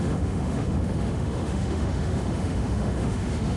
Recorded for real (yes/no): no